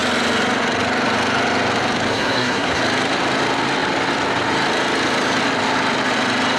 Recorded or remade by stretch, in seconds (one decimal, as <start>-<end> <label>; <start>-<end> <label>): 0.0-2.1 recorded; 2.1-2.8 remade; 2.8-6.6 recorded